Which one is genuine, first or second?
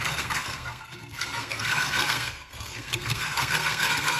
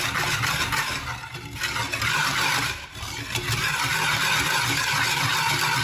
second